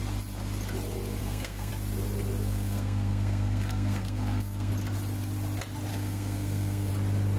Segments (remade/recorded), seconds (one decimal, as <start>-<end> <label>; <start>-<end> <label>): 0.0-1.2 recorded; 1.2-1.7 remade; 1.7-2.4 recorded; 2.4-4.7 remade; 4.7-5.9 recorded; 5.9-6.9 remade; 6.9-7.4 recorded